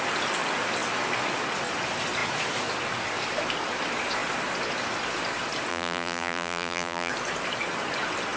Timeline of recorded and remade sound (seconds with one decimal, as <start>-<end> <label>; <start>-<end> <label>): 0.0-5.7 recorded; 5.7-7.1 remade; 7.1-8.4 recorded